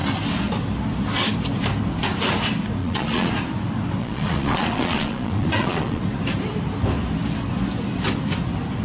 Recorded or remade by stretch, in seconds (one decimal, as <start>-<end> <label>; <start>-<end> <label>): 0.0-2.8 recorded; 2.8-3.3 remade; 3.3-4.0 recorded; 4.0-6.0 remade; 6.0-8.8 recorded